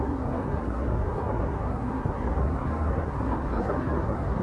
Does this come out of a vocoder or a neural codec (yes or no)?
yes